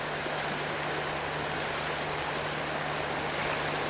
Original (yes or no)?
yes